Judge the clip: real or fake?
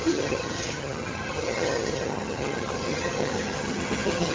fake